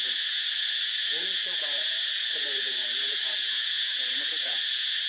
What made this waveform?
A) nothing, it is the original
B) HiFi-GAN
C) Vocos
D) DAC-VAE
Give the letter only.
C